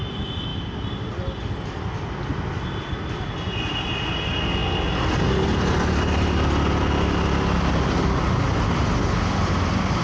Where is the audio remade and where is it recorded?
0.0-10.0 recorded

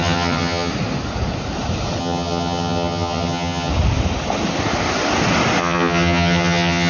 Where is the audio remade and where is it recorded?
0.0-0.7 remade; 0.7-2.0 recorded; 2.0-3.7 remade; 3.7-5.6 recorded; 5.6-6.9 remade

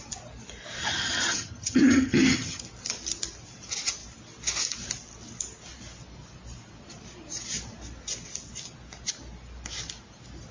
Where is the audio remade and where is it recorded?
0.0-0.8 recorded; 0.8-2.6 remade; 2.6-10.5 recorded